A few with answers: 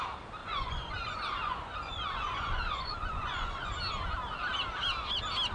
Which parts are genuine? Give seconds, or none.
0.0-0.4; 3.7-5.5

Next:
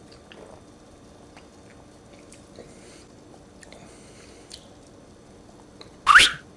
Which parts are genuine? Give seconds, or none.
0.0-6.6

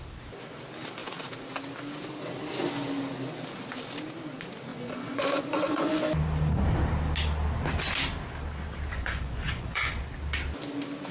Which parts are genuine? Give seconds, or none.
0.0-4.7; 6.0-8.9; 10.0-11.1